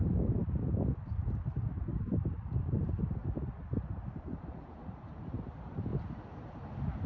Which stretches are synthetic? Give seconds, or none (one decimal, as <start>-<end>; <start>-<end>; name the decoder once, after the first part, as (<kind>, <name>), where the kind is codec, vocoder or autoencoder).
0.0-3.2 (vocoder, BigVGAN v2); 3.8-5.9